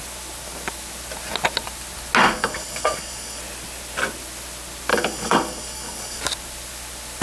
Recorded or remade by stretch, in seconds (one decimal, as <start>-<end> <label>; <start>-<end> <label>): 0.0-2.2 recorded; 2.2-3.4 remade; 3.4-4.9 recorded; 4.9-6.2 remade; 6.2-7.2 recorded